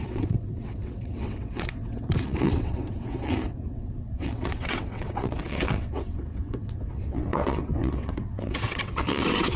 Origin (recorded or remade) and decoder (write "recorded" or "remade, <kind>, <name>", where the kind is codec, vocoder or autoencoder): remade, vocoder, WaveNeXt